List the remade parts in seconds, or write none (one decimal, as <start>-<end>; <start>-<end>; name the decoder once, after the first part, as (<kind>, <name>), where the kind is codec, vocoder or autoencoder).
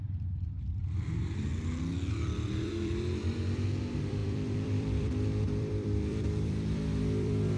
0.0-1.5 (vocoder, BigVGAN v2); 2.1-7.6